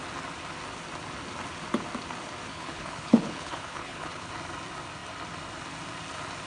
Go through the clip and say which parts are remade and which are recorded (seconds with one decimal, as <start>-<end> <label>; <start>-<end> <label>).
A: 0.0-2.5 recorded; 2.5-4.3 remade; 4.3-6.5 recorded